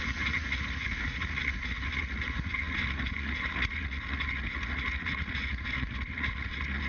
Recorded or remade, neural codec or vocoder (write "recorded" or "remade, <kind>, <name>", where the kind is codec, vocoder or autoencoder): remade, vocoder, Vocos